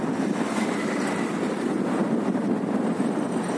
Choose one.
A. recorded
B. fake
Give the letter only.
A